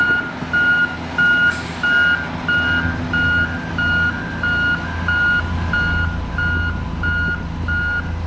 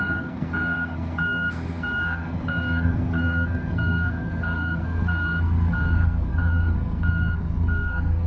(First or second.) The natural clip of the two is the first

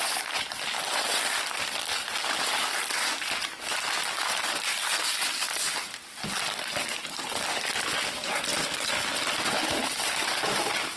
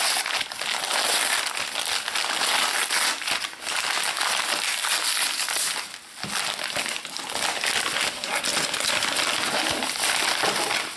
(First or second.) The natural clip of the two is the second